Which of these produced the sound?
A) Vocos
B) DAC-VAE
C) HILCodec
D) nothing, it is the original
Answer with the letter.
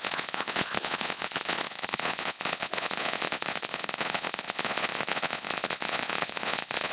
A